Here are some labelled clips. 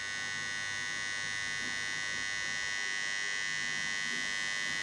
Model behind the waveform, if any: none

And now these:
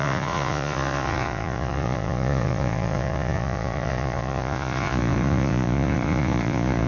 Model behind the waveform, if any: vocoder, Vocos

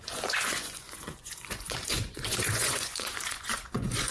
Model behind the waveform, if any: vocoder, Vocos